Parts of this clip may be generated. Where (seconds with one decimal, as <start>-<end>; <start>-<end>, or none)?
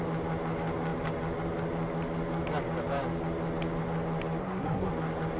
4.4-4.9